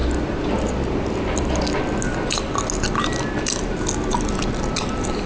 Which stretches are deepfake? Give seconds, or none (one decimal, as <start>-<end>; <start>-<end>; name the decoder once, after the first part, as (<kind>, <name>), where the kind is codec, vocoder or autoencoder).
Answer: none